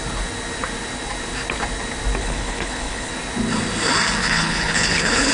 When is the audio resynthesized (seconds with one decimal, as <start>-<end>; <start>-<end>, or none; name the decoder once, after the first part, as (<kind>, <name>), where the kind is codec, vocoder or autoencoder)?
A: 2.2-3.1 (codec, HILCodec); 4.2-5.3